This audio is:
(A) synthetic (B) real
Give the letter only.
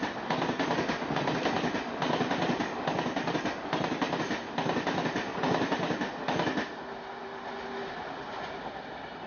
B